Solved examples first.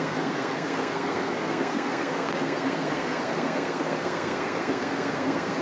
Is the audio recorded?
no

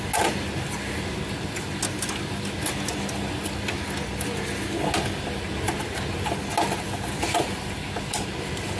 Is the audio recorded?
yes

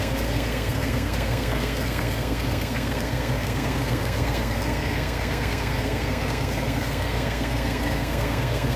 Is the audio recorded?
no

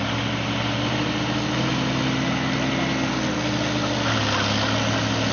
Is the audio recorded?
yes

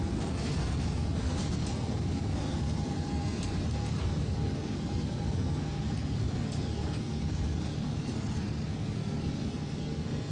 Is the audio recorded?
no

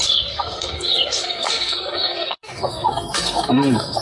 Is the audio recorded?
no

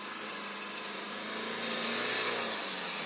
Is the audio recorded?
yes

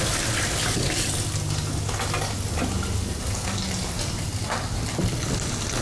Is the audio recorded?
yes